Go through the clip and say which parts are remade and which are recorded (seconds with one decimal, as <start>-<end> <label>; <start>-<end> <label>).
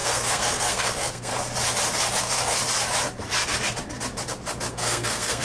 0.0-1.3 remade; 1.3-2.2 recorded; 2.2-2.6 remade; 2.6-4.7 recorded; 4.7-5.4 remade